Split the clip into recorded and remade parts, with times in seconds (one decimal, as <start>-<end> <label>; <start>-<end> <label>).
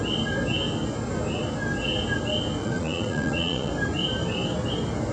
0.0-2.6 recorded; 2.6-3.7 remade; 3.7-5.1 recorded